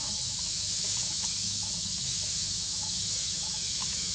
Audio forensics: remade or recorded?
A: remade